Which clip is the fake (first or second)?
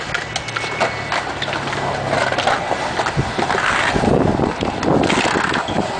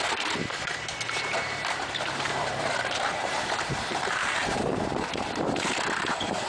second